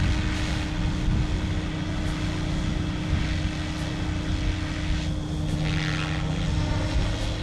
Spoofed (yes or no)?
no